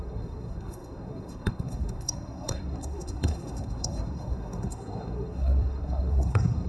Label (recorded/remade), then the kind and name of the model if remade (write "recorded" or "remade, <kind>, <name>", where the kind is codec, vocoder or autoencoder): remade, codec, SNAC